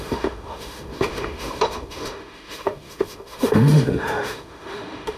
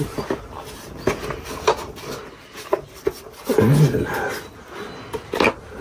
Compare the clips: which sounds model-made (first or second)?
first